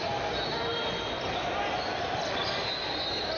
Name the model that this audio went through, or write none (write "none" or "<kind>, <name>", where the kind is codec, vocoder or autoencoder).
none